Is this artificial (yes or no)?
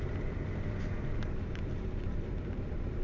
yes